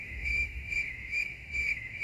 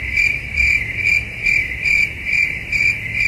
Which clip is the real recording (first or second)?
second